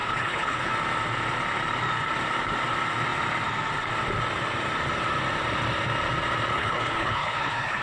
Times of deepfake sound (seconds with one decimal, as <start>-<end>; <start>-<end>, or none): 0.0-0.7; 6.5-7.8